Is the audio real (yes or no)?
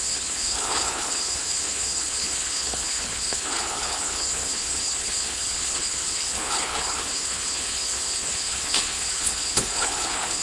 no